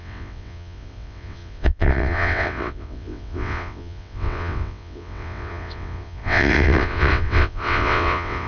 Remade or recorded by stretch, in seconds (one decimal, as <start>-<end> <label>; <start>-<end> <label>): 0.0-8.5 remade